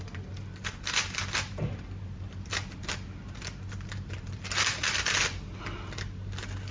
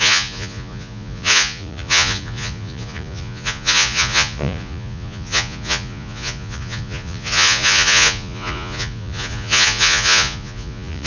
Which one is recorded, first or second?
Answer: first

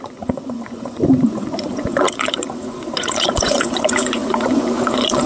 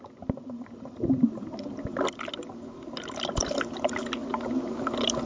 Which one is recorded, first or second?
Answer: second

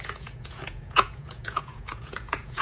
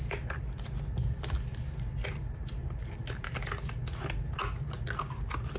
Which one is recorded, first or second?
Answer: second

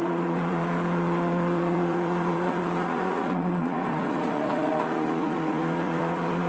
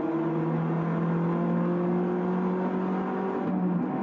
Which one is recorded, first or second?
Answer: second